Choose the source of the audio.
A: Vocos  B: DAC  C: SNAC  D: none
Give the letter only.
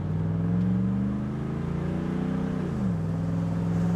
D